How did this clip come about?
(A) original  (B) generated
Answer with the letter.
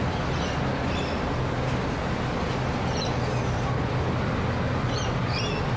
A